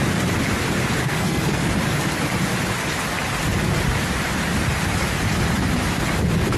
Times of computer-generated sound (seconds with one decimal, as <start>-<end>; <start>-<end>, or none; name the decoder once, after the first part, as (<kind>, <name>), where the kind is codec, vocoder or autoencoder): 1.0-1.7 (codec, SNAC)